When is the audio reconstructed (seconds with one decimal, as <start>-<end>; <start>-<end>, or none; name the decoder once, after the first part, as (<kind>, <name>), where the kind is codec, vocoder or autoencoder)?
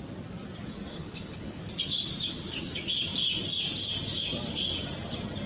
0.9-1.7 (codec, HILCodec)